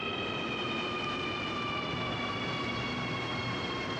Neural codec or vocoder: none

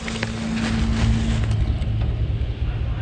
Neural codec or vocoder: none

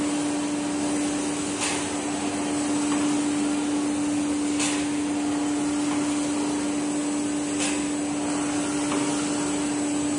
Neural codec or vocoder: none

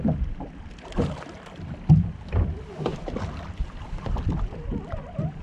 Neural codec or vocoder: vocoder, BigVGAN v2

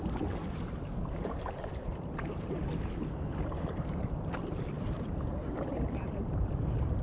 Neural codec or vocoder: vocoder, BigVGAN v2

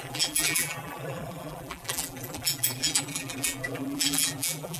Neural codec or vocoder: vocoder, BigVGAN v2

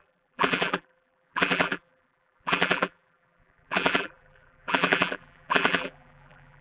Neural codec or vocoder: vocoder, BigVGAN v2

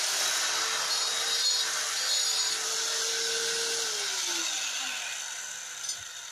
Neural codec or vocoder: none